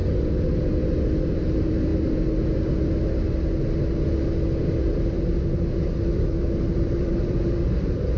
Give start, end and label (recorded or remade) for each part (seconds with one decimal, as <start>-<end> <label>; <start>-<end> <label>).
0.0-1.3 recorded; 1.3-1.9 remade; 1.9-6.2 recorded; 6.2-8.2 remade